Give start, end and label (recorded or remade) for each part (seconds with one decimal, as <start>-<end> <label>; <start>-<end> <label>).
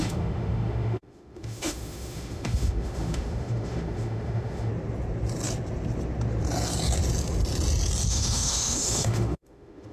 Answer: 0.0-4.7 remade; 4.7-8.1 recorded; 8.1-9.9 remade